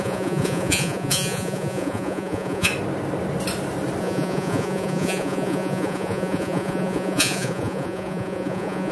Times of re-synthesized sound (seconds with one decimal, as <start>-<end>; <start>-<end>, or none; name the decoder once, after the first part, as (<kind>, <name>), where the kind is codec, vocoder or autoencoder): 0.0-2.7 (vocoder, Vocos); 4.0-8.9